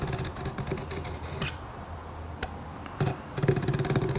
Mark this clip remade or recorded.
recorded